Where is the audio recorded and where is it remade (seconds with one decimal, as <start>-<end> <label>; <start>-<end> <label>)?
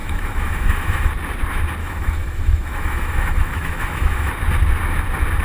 0.0-1.1 remade; 1.1-1.8 recorded; 1.8-4.3 remade; 4.3-5.4 recorded